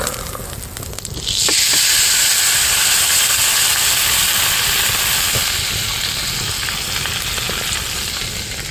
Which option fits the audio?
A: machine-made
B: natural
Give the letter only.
B